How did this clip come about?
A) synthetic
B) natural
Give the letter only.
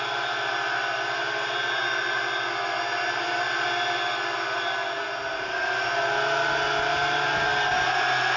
B